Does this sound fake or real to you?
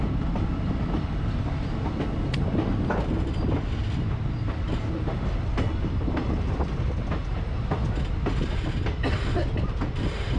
real